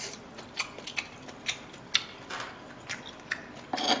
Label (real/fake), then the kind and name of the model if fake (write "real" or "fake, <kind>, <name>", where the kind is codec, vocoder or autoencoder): real